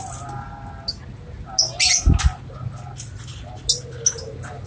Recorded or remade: recorded